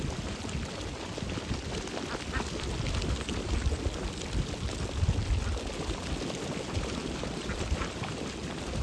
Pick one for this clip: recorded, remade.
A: recorded